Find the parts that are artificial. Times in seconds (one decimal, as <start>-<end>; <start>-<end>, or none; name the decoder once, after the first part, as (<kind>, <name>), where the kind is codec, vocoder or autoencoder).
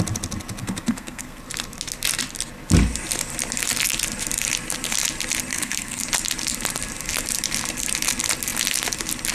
0.6-1.4 (codec, SNAC); 5.5-6.0